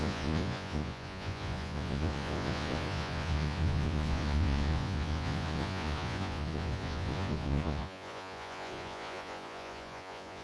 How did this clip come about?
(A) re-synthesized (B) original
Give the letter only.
A